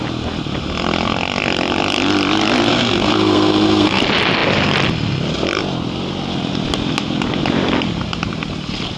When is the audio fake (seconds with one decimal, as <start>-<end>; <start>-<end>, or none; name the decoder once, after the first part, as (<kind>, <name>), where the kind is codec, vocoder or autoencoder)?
2.7-4.0 (codec, SNAC)